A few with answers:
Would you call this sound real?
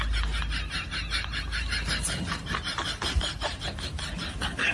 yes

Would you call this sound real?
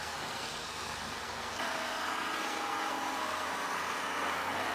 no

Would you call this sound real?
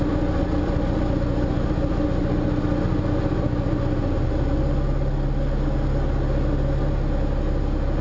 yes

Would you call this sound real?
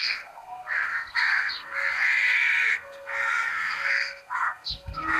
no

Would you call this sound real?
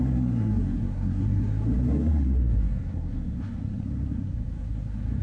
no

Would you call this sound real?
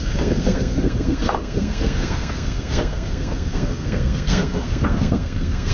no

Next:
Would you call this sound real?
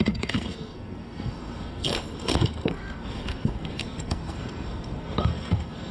no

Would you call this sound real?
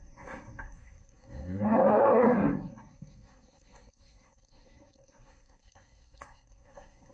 no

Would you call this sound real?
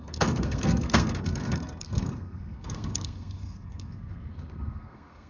no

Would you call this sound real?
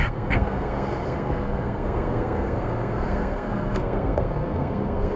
no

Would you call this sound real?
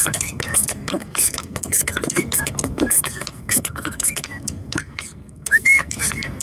no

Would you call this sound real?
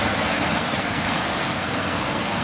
no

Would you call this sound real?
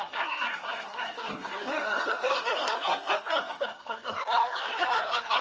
no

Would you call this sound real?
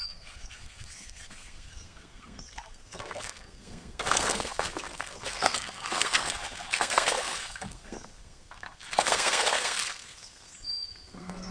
no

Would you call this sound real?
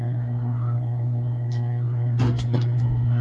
no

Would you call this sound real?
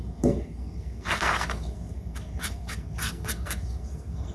no